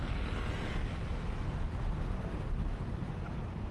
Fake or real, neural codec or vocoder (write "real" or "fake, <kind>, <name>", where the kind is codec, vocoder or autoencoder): real